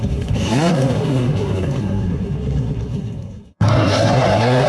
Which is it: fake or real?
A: fake